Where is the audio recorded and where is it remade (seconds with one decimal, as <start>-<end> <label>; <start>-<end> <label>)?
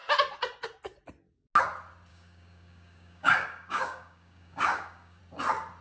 0.0-2.1 recorded; 2.1-5.2 remade; 5.2-5.8 recorded